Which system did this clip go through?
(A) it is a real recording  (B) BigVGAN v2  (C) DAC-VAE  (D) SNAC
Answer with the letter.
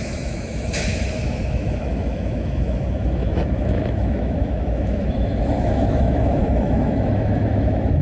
C